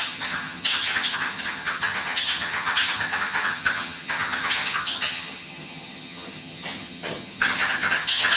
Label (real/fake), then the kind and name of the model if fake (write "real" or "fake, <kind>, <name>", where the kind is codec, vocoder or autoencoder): fake, vocoder, HiFi-GAN